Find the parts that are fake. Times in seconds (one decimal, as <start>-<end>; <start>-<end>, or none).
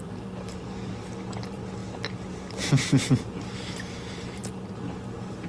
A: none